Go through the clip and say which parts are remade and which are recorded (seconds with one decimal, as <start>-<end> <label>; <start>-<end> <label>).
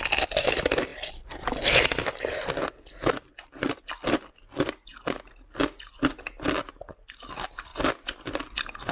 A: 0.0-8.9 recorded